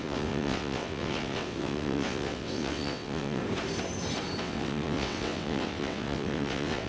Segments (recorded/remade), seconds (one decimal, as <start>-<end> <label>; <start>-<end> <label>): 0.0-3.4 remade; 3.4-4.4 recorded; 4.4-6.9 remade